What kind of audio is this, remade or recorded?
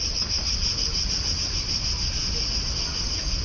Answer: recorded